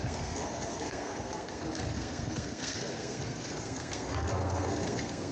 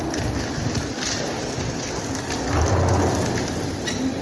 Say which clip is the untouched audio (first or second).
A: second